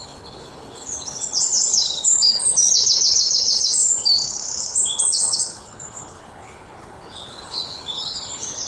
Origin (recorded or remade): remade